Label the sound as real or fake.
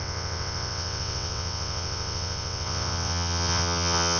fake